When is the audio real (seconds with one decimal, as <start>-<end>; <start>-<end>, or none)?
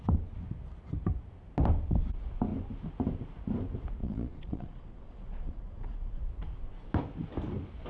0.0-4.0; 6.2-7.9